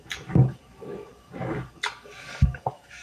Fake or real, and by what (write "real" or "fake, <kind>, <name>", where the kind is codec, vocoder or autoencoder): fake, codec, DAC